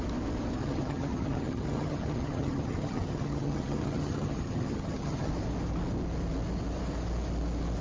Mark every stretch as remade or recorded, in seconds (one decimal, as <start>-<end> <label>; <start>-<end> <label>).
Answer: 0.0-0.6 recorded; 0.6-5.3 remade; 5.3-7.8 recorded